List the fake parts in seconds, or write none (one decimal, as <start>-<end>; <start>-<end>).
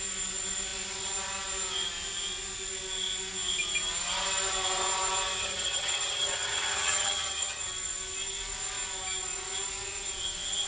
5.4-7.6